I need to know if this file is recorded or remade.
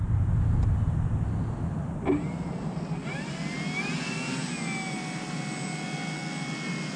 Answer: recorded